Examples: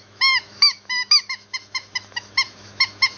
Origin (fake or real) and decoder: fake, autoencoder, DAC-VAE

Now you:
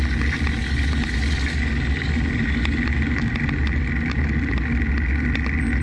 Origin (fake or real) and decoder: real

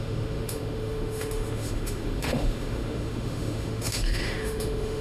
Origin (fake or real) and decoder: fake, autoencoder, DAC-VAE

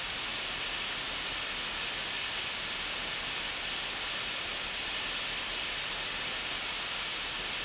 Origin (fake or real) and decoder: real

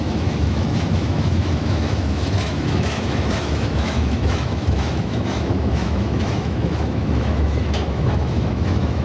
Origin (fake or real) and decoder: fake, autoencoder, DAC-VAE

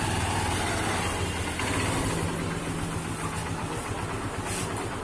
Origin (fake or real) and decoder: real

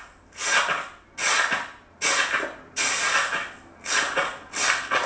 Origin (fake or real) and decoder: real